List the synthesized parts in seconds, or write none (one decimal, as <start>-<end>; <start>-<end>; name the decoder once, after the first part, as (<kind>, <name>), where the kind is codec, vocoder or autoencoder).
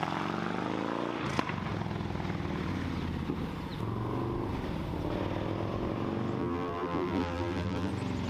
6.4-7.9 (vocoder, BigVGAN v2)